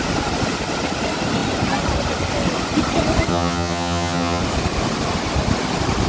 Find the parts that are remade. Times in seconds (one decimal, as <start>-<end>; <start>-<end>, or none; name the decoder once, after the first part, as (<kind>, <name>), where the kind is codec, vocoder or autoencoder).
3.3-4.4 (vocoder, HiFi-GAN)